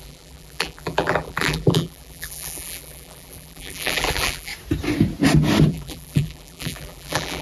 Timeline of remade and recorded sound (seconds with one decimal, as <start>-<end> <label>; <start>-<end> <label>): 0.0-4.5 remade; 4.5-5.7 recorded; 5.7-7.4 remade